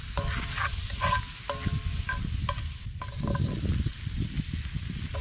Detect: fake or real real